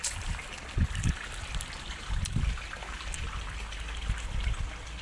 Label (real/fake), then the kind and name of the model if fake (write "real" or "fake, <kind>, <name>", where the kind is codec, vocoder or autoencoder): real